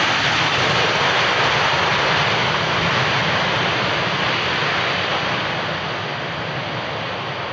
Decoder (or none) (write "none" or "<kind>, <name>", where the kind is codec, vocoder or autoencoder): none